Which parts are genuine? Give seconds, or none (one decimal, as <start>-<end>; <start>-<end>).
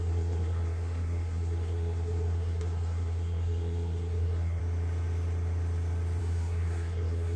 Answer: 4.6-6.2